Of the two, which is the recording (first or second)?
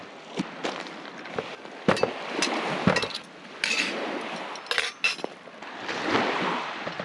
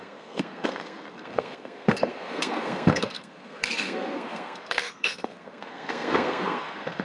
first